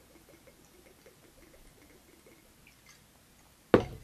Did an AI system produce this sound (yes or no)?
no